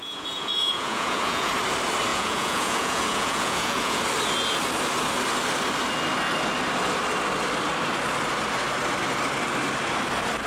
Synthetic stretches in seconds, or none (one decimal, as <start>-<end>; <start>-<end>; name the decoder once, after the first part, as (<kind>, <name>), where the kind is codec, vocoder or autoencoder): 0.0-1.5 (vocoder, Vocos); 2.1-4.0